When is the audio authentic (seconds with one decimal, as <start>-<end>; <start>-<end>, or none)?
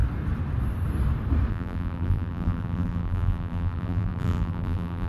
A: 0.0-1.5